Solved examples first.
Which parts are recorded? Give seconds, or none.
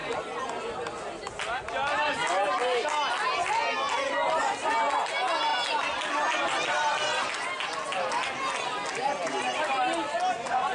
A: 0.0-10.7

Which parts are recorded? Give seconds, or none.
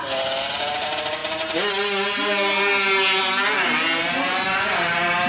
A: 0.0-4.0; 4.8-5.3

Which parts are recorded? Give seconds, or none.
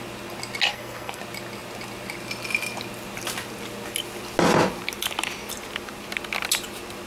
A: 0.0-0.7; 1.2-7.1